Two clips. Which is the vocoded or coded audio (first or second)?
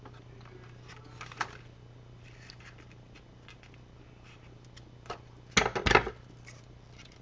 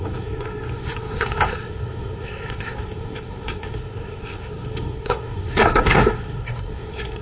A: second